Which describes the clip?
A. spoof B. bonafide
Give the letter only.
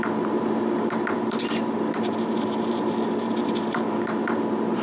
A